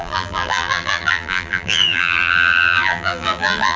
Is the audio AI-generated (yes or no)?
yes